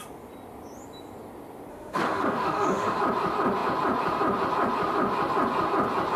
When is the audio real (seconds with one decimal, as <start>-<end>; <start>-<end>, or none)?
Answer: 0.0-1.7; 3.0-6.2